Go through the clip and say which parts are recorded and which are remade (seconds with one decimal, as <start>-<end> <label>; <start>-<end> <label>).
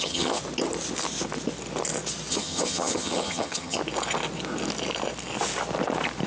0.0-0.4 remade; 0.4-2.3 recorded; 2.3-3.8 remade; 3.8-6.3 recorded